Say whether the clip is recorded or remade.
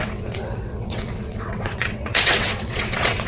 remade